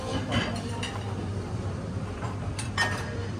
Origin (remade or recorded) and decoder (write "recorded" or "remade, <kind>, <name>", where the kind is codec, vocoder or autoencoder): remade, vocoder, BigVGAN v2